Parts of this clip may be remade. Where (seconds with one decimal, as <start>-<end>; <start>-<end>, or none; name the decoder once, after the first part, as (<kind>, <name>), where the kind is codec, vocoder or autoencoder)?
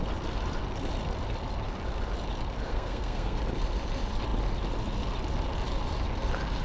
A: 2.7-3.4 (codec, SNAC)